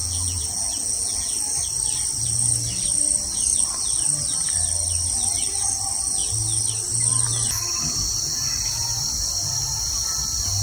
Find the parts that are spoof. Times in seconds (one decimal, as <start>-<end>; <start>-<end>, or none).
0.0-1.4